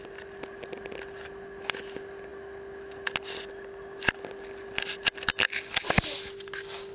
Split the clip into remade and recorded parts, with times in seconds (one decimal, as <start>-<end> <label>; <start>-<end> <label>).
0.0-6.9 recorded